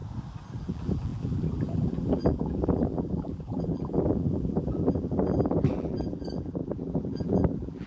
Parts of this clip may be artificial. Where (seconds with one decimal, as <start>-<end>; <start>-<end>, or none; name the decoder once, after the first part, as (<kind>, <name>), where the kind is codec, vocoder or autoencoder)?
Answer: 0.6-7.9 (vocoder, BigVGAN v2)